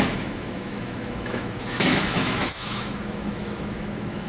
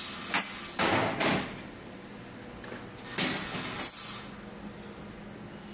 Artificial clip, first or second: first